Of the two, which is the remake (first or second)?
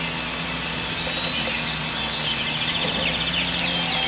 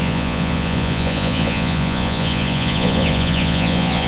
second